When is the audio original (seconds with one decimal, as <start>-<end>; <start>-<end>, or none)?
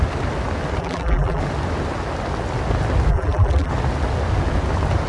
0.0-0.8; 1.4-3.1; 3.7-5.1